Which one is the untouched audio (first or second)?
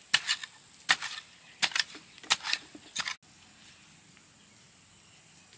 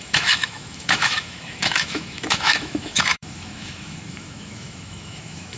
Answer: first